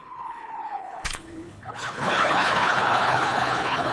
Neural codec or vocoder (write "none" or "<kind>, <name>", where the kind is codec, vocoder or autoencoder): codec, HILCodec